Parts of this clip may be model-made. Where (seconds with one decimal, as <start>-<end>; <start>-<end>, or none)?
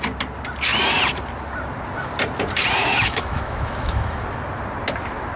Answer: 2.8-4.2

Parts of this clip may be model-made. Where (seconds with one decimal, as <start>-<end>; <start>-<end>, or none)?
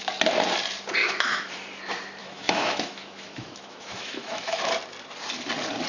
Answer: 1.0-1.5; 2.2-4.7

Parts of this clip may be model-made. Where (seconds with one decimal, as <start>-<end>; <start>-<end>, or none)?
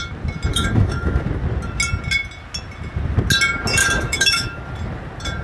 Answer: 0.5-1.2; 3.8-4.6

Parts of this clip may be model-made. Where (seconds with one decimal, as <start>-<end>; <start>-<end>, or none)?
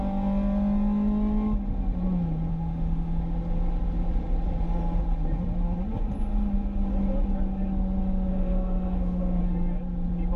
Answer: 2.5-3.2; 8.3-9.4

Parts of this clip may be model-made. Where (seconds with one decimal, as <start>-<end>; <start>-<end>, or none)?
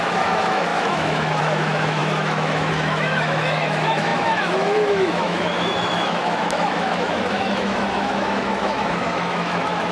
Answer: 0.0-9.9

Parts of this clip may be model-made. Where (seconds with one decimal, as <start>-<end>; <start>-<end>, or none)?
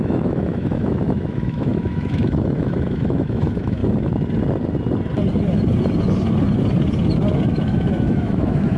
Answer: 0.0-3.8; 7.4-8.8